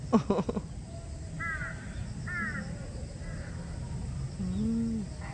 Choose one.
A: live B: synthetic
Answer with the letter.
A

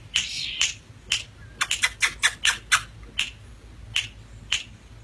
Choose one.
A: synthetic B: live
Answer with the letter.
B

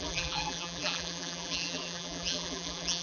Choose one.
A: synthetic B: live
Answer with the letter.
A